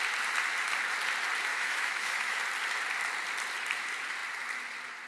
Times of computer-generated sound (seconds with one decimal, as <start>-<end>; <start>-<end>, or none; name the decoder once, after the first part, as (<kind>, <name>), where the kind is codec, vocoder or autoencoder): 1.5-2.4 (autoencoder, DAC-VAE)